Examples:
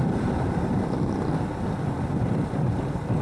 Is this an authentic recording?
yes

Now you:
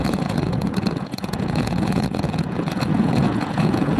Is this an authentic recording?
no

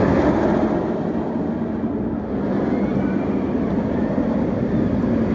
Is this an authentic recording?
yes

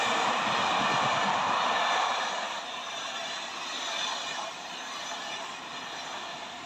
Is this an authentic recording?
yes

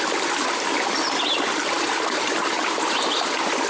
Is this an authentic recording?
yes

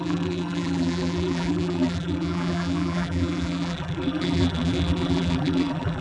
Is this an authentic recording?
no